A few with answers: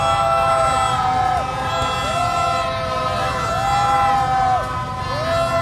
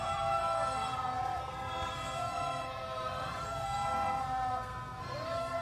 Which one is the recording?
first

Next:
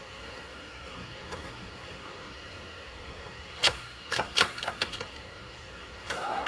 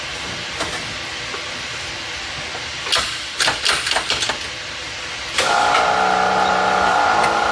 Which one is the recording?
second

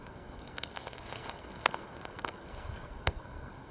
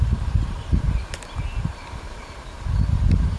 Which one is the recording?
second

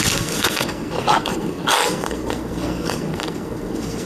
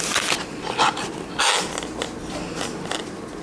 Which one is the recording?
second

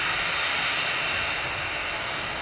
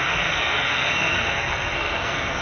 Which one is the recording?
first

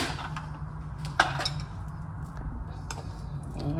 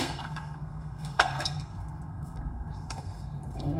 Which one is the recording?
first